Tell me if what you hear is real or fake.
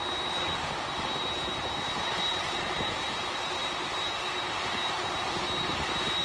fake